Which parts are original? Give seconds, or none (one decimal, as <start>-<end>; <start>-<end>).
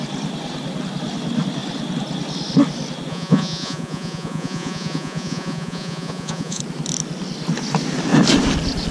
0.0-3.1; 6.6-8.9